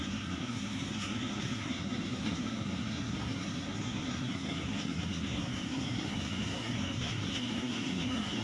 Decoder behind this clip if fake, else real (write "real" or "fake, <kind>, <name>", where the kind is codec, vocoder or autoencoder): fake, codec, SNAC